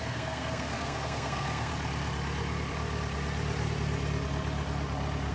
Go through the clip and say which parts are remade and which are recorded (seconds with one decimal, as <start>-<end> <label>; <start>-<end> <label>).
0.0-1.7 remade; 1.7-5.3 recorded